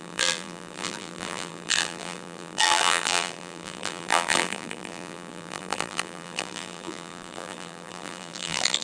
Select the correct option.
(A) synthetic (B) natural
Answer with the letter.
A